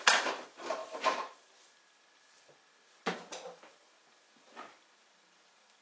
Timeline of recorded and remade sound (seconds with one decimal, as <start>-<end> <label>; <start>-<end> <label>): 0.0-5.8 recorded